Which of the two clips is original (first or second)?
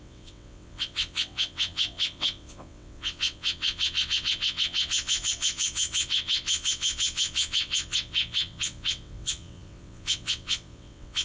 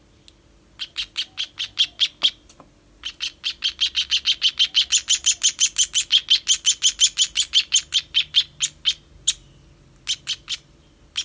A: second